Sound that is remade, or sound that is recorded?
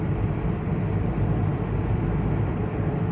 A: remade